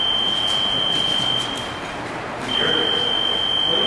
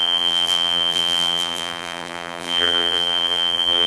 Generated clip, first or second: second